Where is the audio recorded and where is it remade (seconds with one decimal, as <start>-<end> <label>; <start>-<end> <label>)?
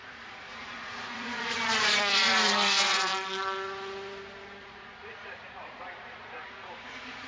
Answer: 0.0-3.1 remade; 3.1-4.6 recorded; 4.6-7.3 remade